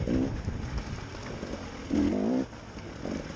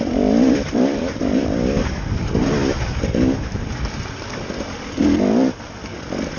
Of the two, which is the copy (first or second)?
second